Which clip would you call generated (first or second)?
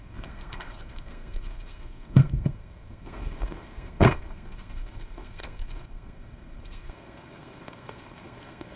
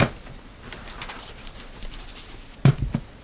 first